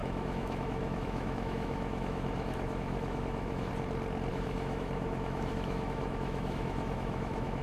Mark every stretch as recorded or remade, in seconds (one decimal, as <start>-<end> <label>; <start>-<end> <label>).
0.0-3.7 remade; 3.7-4.3 recorded; 4.3-7.6 remade